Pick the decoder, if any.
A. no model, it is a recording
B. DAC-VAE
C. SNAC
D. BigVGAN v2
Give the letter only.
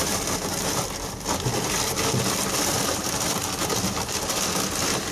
A